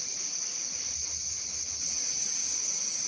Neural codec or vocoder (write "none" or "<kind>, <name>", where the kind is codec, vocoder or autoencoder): none